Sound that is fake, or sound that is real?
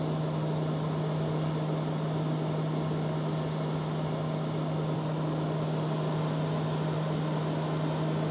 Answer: real